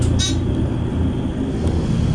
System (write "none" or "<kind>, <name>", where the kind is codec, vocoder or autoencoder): none